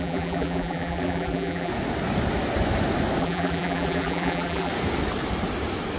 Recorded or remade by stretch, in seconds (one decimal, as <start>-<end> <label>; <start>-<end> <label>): 0.0-1.7 remade; 1.7-3.2 recorded; 3.2-4.7 remade; 4.7-6.0 recorded